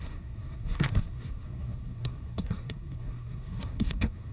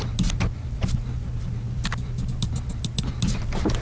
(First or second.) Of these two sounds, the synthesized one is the first